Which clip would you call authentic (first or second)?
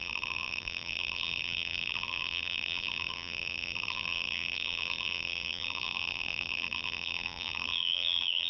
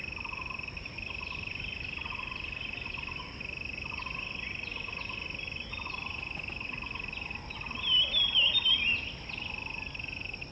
second